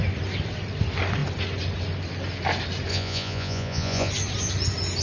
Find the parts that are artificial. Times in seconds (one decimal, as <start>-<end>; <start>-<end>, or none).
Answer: 2.9-4.1